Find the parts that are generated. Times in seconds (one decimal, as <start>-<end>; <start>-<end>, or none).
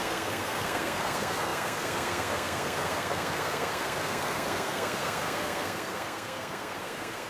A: 0.0-7.3